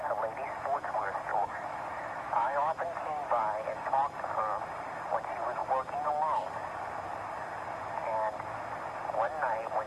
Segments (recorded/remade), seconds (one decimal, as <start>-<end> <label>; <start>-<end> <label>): 0.0-1.3 recorded; 1.3-3.4 remade; 3.4-9.9 recorded